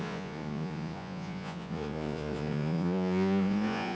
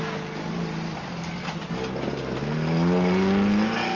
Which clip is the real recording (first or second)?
second